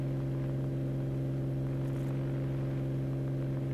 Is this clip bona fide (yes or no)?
yes